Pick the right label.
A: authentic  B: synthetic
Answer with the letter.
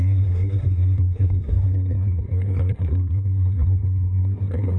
B